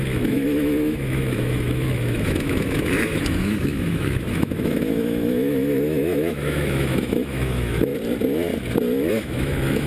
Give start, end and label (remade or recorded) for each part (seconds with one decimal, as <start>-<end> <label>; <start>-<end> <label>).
0.0-7.9 remade; 7.9-9.1 recorded; 9.1-9.9 remade

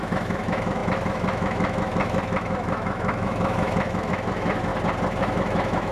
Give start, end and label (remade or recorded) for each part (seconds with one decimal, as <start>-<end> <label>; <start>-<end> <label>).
0.0-4.7 remade; 4.7-5.2 recorded; 5.2-5.9 remade